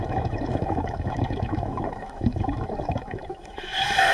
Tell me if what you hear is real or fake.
fake